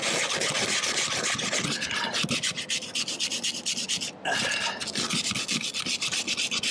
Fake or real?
real